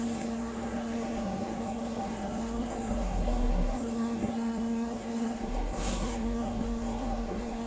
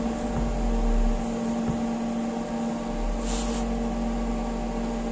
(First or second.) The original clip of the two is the second